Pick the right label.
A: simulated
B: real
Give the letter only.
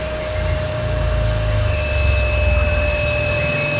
B